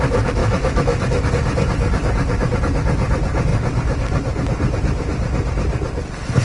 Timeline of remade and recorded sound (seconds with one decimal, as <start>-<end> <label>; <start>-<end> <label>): 0.0-0.4 recorded; 0.4-1.3 remade; 1.3-6.4 recorded